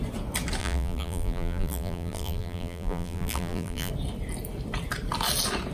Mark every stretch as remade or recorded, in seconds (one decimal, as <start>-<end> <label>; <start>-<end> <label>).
0.0-0.6 recorded; 0.6-3.9 remade; 3.9-5.7 recorded